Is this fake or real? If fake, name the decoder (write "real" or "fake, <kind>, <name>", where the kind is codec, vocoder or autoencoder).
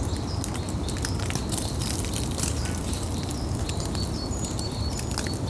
real